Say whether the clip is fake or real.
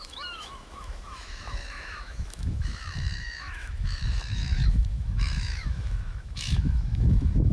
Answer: fake